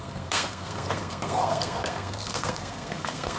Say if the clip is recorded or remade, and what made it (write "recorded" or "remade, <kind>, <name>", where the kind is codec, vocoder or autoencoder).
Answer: remade, codec, SNAC